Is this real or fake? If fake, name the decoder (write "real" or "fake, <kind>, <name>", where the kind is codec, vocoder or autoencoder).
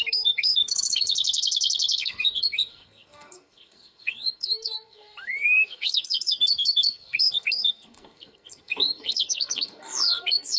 fake, codec, SNAC